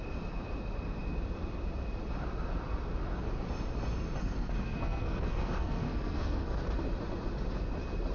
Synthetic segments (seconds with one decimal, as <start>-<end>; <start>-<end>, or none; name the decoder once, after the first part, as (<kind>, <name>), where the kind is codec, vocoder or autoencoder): 4.2-6.6 (codec, SNAC)